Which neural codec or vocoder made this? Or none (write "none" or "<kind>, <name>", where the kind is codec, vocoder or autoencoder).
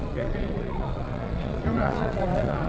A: vocoder, Vocos